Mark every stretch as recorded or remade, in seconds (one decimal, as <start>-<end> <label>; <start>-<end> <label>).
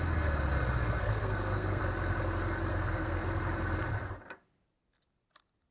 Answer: 0.0-1.0 recorded; 1.0-1.8 remade; 1.8-2.7 recorded; 2.7-3.2 remade; 3.2-5.7 recorded